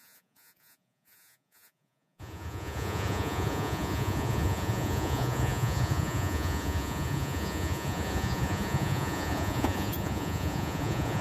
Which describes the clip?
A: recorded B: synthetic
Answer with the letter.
B